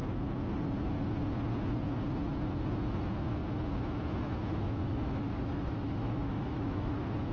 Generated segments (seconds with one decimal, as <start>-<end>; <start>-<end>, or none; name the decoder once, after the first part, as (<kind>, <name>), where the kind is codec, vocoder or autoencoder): 4.8-7.3 (autoencoder, DAC-VAE)

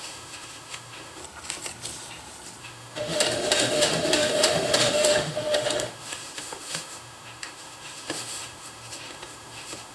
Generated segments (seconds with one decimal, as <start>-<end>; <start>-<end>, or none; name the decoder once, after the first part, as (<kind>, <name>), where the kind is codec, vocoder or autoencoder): 0.0-1.2 (autoencoder, DAC-VAE); 2.6-9.9

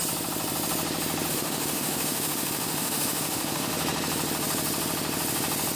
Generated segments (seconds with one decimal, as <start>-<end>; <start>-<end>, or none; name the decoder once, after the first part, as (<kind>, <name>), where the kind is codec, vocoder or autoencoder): 1.3-3.7 (autoencoder, DAC-VAE)

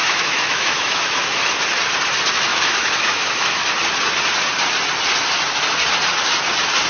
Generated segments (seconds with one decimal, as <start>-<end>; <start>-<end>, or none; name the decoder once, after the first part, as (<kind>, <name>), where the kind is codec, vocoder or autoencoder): 0.0-1.4 (autoencoder, DAC-VAE); 2.5-3.7

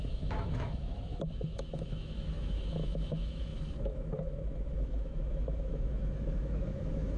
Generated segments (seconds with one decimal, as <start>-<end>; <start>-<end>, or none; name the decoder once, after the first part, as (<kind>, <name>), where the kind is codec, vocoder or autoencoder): 0.0-7.2 (autoencoder, DAC-VAE)